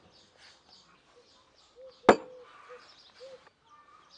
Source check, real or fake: real